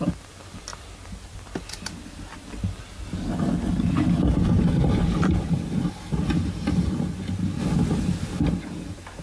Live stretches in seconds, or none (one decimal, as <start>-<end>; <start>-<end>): 0.0-9.2